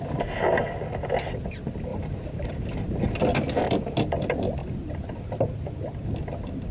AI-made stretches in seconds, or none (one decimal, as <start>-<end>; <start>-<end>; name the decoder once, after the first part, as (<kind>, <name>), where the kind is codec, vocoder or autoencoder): 1.9-2.7 (vocoder, BigVGAN v2)